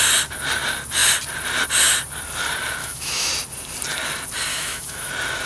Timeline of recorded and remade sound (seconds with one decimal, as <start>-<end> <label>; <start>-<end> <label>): 0.0-2.8 recorded; 2.8-3.3 remade; 3.3-4.5 recorded; 4.5-5.1 remade; 5.1-5.5 recorded